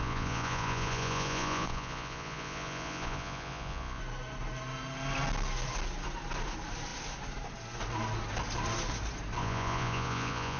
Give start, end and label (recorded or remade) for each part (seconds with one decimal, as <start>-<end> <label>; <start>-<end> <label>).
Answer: 0.0-4.0 remade; 4.0-9.4 recorded; 9.4-10.6 remade